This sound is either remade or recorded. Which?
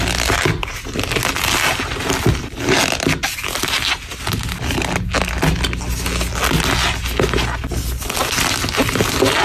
recorded